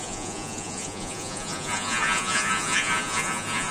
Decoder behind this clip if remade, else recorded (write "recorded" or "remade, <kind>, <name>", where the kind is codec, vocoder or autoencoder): remade, vocoder, Vocos